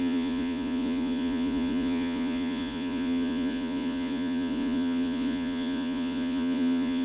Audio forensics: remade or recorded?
remade